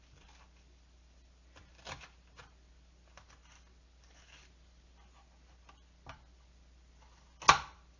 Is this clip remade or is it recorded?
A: recorded